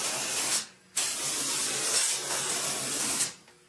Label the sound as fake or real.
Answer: real